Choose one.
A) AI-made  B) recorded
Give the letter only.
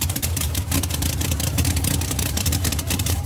A